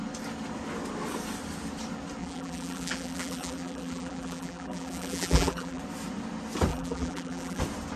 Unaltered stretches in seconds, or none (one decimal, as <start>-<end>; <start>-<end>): 0.0-2.2; 5.8-6.7; 7.6-8.0